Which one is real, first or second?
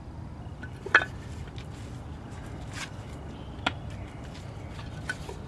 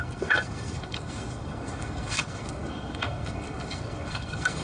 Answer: first